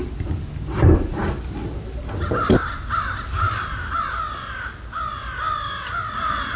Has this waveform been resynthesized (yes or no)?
no